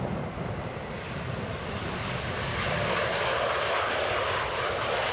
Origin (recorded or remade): recorded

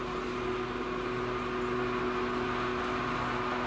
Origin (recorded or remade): recorded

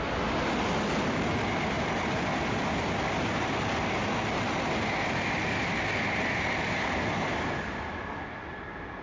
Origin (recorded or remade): recorded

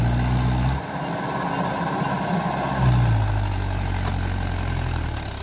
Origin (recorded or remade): recorded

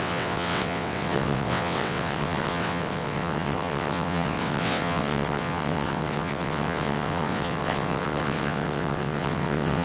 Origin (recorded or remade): remade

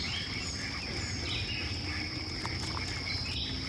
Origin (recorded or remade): recorded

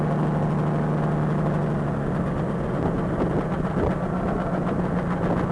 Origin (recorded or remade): recorded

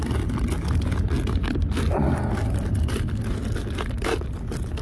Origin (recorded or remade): recorded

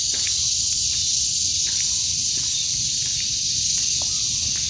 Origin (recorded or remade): recorded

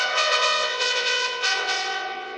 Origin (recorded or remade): remade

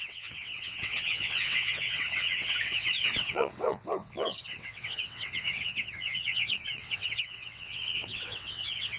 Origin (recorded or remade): remade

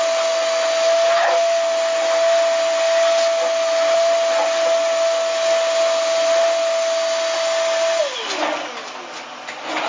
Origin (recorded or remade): recorded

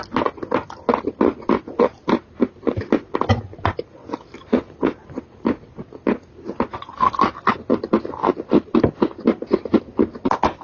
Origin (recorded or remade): recorded